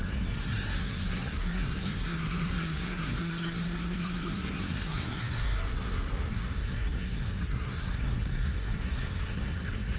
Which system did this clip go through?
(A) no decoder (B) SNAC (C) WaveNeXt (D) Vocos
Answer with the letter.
B